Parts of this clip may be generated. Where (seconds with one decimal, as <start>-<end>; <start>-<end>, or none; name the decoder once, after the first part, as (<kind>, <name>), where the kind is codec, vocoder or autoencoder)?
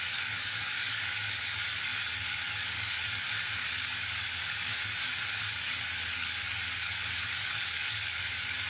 0.0-8.7 (codec, DAC)